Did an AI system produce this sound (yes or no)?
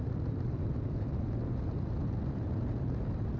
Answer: no